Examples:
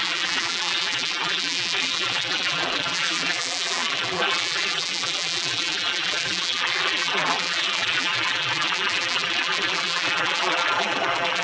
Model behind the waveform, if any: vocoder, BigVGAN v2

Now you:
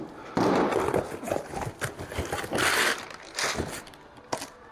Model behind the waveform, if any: none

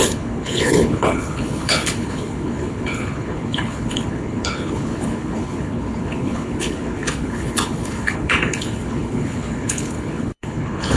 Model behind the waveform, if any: codec, HILCodec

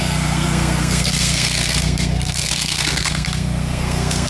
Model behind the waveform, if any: codec, SNAC